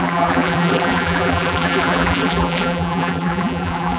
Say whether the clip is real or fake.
fake